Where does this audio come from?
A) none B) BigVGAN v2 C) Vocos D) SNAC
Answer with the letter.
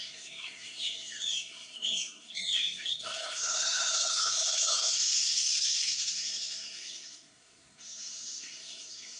D